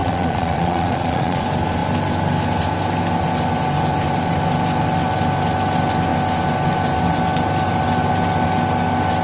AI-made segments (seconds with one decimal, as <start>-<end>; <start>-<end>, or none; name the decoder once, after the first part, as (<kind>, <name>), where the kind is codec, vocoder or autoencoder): 0.0-1.4 (vocoder, Vocos)